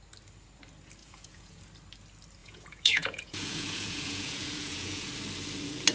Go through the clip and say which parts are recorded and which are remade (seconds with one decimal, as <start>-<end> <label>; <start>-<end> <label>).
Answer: 0.0-1.0 recorded; 1.0-1.6 remade; 1.6-2.4 recorded; 2.4-5.1 remade; 5.1-5.9 recorded